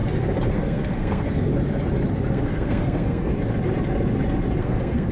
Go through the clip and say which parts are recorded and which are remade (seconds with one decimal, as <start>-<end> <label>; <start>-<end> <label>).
0.0-0.5 recorded; 0.5-1.5 remade; 1.5-2.3 recorded; 2.3-3.3 remade; 3.3-4.6 recorded; 4.6-5.1 remade